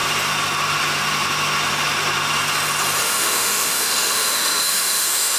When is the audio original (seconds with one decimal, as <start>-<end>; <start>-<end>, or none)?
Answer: 0.0-3.0